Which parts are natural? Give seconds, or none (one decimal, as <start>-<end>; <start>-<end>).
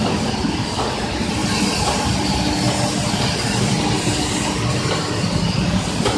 0.0-6.2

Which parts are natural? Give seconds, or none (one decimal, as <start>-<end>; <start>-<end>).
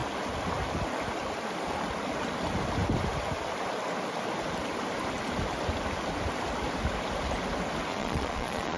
0.0-7.9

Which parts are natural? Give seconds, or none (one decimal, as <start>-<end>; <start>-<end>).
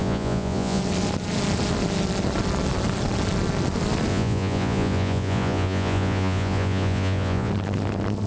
0.8-4.1; 7.5-8.3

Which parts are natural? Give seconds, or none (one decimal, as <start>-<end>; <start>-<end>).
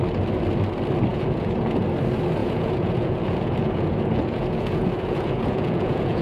0.0-1.1; 1.8-2.4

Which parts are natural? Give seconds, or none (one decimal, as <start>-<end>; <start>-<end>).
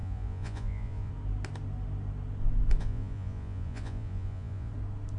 1.1-2.8; 4.7-5.2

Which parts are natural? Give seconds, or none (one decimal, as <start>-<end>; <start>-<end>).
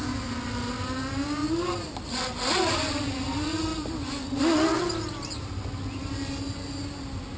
0.0-7.4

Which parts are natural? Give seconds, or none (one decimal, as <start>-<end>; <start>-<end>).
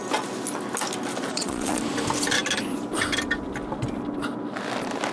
0.0-1.3; 1.8-5.1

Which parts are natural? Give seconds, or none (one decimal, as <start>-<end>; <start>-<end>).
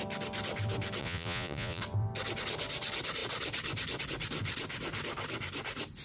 0.0-1.0; 1.8-6.0